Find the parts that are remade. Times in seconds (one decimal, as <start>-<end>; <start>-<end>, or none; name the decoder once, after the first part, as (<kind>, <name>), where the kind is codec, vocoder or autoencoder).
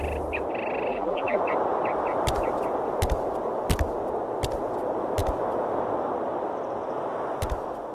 0.9-1.4 (vocoder, BigVGAN v2)